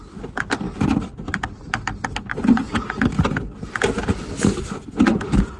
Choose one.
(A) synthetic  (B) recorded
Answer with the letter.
B